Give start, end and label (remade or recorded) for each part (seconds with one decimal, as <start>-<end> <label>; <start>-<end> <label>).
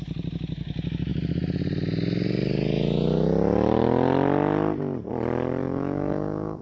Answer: 0.0-5.6 recorded; 5.6-6.6 remade